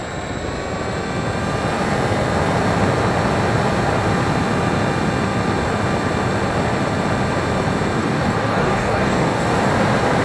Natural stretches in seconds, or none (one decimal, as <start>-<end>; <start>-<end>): 0.0-8.0; 9.7-10.2